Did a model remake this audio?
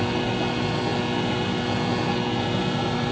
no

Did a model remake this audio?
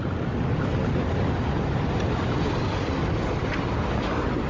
no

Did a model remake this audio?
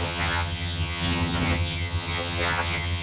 yes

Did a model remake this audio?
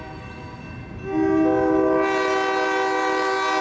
no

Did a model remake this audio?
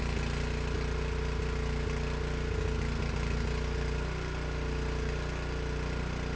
no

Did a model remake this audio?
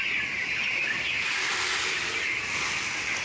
no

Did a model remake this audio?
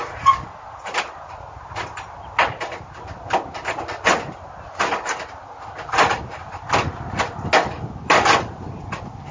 no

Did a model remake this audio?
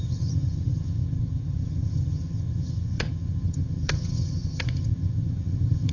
yes